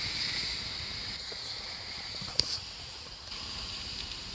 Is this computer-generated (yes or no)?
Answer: no